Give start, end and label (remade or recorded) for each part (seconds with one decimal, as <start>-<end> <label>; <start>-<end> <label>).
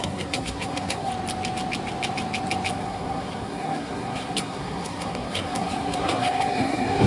0.0-1.1 remade; 1.1-2.7 recorded; 2.7-7.1 remade